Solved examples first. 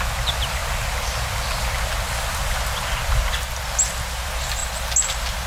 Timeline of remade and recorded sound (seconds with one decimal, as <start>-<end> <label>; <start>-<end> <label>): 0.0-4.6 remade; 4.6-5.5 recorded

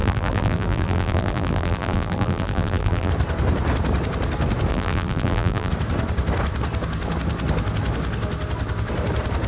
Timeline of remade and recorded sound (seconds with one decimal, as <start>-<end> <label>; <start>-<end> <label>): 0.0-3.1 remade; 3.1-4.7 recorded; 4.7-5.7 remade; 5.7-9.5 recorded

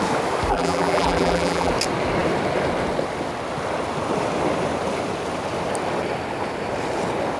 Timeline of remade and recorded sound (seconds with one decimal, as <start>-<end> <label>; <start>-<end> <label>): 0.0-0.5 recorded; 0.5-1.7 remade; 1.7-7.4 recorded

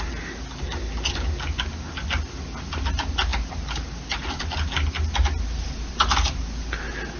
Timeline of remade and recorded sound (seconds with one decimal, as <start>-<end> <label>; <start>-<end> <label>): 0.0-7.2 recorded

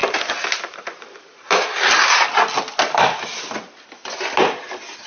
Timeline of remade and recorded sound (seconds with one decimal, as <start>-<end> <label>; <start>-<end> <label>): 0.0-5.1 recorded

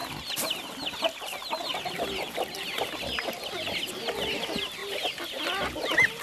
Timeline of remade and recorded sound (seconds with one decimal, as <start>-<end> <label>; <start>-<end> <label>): 0.0-1.7 recorded; 1.7-3.0 remade; 3.0-4.8 recorded; 4.8-5.4 remade; 5.4-6.2 recorded